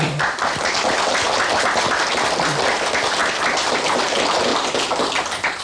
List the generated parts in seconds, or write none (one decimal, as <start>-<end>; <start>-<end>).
none